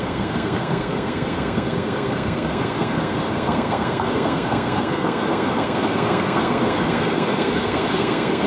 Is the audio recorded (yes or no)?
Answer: no